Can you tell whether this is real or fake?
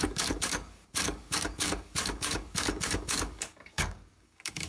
fake